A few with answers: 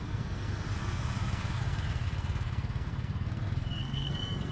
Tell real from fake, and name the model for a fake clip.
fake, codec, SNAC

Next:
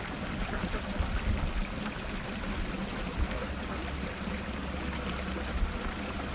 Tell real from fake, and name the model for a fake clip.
real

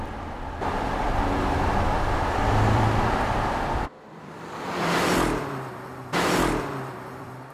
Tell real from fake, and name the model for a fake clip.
fake, vocoder, BigVGAN v2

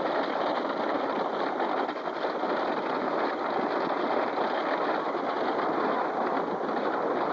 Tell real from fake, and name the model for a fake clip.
real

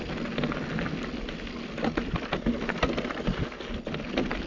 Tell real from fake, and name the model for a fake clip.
real